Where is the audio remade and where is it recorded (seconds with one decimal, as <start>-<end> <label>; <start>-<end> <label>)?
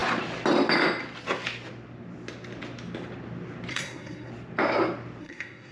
0.0-3.7 recorded; 3.7-4.3 remade; 4.3-5.2 recorded; 5.2-5.7 remade